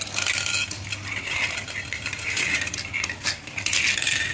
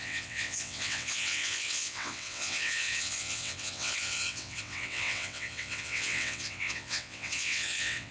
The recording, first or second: first